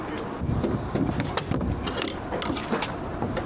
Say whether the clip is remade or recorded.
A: recorded